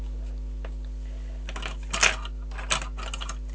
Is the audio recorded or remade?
recorded